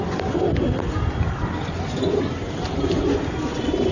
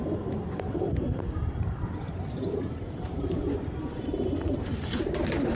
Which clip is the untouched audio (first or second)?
first